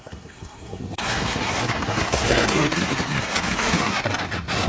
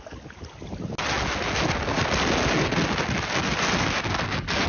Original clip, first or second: second